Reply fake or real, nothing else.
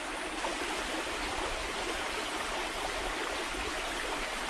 real